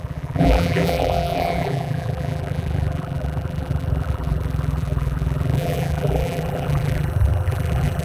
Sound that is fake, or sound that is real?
fake